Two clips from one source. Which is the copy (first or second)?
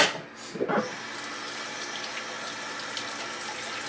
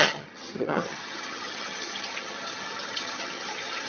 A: second